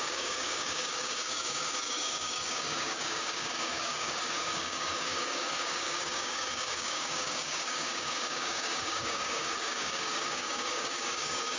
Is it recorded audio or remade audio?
remade